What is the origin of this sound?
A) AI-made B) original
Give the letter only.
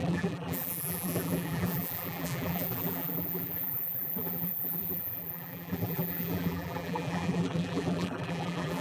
A